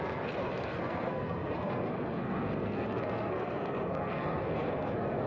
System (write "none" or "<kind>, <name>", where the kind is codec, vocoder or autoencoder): codec, SNAC